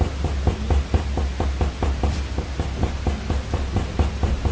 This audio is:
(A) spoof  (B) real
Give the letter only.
B